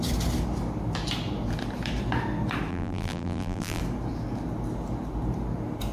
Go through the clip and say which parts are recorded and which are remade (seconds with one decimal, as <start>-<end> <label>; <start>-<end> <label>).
0.0-2.7 recorded; 2.7-3.8 remade; 3.8-5.9 recorded